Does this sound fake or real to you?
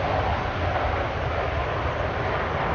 real